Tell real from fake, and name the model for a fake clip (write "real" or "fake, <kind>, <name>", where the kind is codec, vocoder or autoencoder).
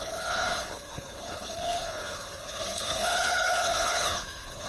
fake, codec, HILCodec